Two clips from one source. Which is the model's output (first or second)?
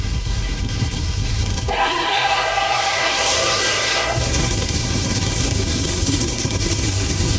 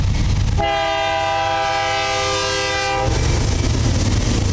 first